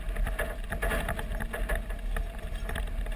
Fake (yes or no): no